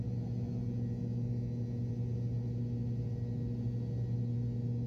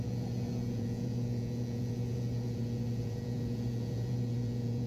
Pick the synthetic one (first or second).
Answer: second